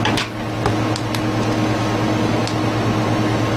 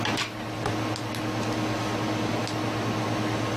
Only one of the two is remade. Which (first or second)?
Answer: second